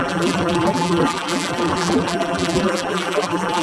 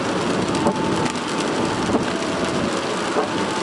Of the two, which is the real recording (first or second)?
second